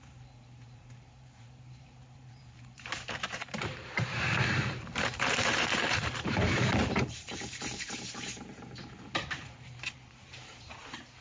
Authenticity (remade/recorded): remade